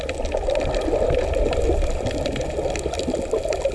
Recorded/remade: recorded